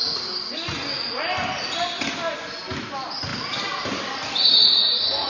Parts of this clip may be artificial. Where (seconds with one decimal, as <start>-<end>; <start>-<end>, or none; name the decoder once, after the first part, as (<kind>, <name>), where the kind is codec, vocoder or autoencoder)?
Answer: none